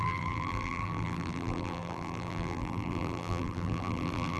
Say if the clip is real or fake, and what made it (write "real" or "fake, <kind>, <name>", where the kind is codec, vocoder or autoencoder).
fake, vocoder, BigVGAN v2